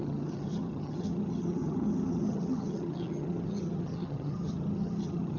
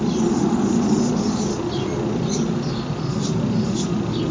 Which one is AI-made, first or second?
first